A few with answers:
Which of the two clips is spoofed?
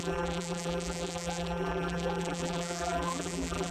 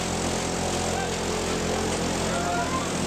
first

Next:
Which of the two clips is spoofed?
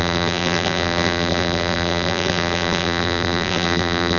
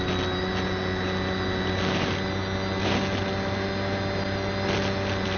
first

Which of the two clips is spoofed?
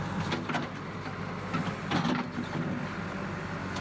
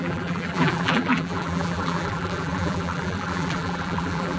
second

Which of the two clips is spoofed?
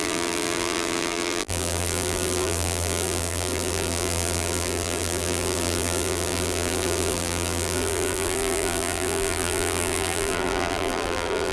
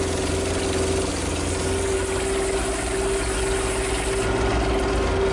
first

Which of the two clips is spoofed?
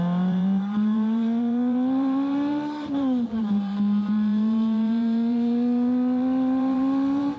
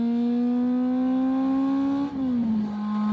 first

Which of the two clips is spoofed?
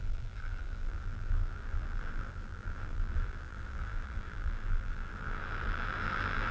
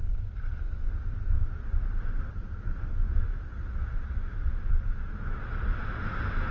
first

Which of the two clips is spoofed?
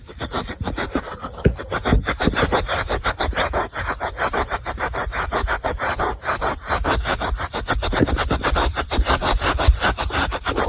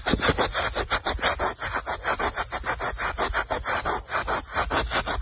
first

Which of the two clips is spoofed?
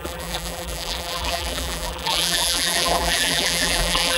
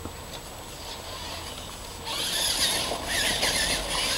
first